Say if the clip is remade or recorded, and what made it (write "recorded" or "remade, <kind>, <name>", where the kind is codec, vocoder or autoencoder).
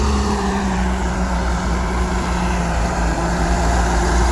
remade, vocoder, BigVGAN v2